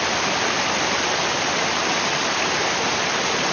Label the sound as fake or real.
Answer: real